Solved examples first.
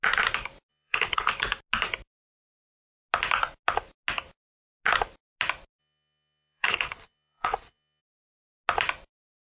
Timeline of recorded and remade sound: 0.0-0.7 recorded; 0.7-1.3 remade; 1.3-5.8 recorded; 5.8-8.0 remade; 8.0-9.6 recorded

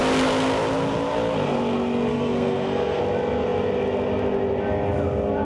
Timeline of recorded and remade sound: 0.0-2.1 recorded; 2.1-3.0 remade; 3.0-5.4 recorded

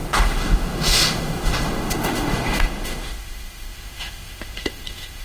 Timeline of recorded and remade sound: 0.0-5.2 remade

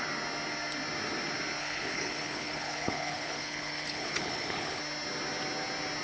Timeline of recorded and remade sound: 0.0-1.6 recorded; 1.6-4.8 remade; 4.8-6.0 recorded

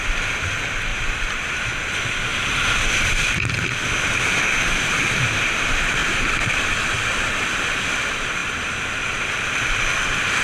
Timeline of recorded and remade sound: 0.0-0.9 recorded; 0.9-1.7 remade; 1.7-6.0 recorded; 6.0-6.6 remade; 6.6-10.4 recorded

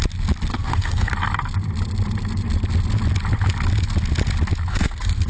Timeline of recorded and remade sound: 0.0-0.5 recorded; 0.5-1.1 remade; 1.1-4.7 recorded; 4.7-5.3 remade

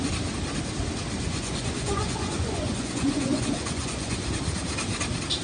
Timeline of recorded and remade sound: 0.0-1.3 recorded; 1.3-4.4 remade; 4.4-5.4 recorded